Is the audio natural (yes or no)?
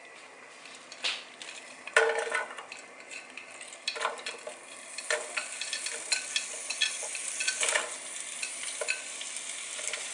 yes